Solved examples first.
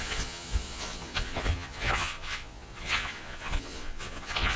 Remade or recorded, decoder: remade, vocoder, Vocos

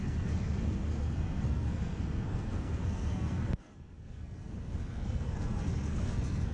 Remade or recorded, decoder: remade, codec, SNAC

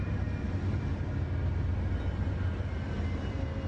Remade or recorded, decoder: recorded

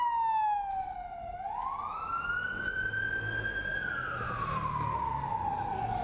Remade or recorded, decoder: recorded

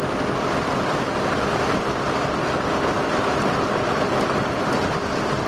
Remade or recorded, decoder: recorded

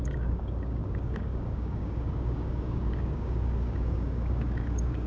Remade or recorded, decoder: remade, codec, DAC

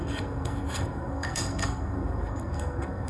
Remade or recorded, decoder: remade, codec, SNAC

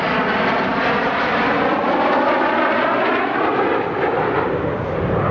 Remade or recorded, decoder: recorded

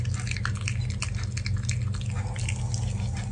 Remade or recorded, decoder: recorded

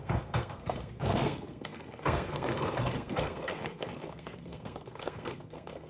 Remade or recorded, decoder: remade, codec, SNAC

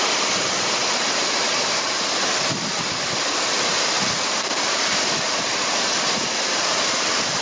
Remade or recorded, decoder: recorded